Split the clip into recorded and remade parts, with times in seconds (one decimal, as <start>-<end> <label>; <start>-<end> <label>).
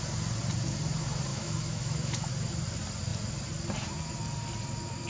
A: 0.0-1.3 recorded; 1.3-2.3 remade; 2.3-5.1 recorded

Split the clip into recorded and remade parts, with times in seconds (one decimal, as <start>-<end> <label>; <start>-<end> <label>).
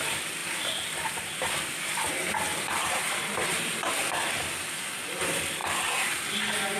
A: 0.0-2.5 recorded; 2.5-3.9 remade; 3.9-6.8 recorded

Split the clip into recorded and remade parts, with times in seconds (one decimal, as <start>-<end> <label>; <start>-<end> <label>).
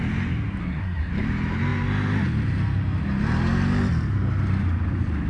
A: 0.0-0.6 recorded; 0.6-1.1 remade; 1.1-5.3 recorded